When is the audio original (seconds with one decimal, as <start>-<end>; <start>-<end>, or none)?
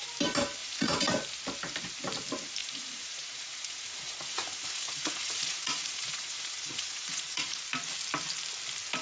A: 0.0-0.6; 1.1-2.6; 7.6-9.0